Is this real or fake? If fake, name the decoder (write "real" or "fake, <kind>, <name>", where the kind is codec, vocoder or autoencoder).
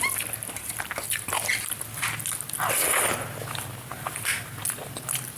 real